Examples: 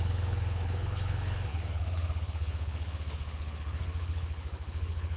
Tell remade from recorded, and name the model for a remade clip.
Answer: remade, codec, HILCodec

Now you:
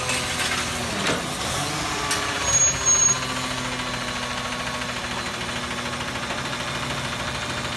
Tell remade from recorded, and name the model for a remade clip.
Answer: recorded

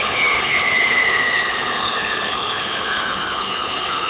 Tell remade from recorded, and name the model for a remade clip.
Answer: remade, codec, HILCodec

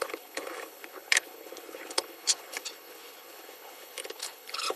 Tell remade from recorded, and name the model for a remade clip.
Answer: remade, codec, HILCodec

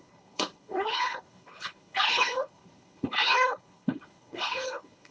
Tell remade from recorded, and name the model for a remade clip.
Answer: remade, codec, HILCodec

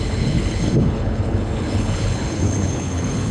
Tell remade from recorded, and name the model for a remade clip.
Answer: remade, codec, HILCodec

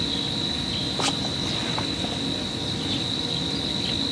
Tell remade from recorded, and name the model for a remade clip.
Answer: recorded